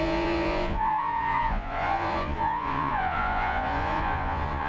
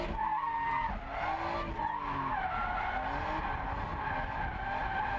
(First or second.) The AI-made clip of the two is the first